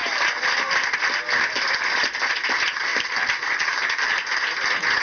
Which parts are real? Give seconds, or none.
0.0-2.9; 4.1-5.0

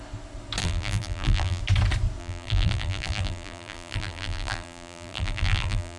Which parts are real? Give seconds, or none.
0.0-0.6; 1.6-2.2

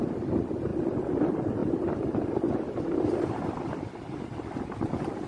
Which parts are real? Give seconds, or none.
0.0-5.3